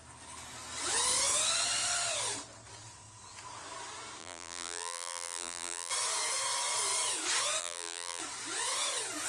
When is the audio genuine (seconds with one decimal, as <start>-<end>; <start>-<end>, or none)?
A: 0.0-4.2; 5.9-7.6; 8.2-9.3